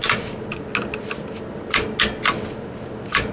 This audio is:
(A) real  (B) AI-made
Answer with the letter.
A